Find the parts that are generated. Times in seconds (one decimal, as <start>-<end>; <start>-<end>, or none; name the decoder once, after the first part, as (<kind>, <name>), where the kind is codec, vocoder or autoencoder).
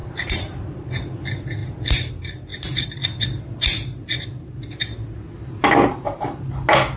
0.0-0.9 (vocoder, BigVGAN v2)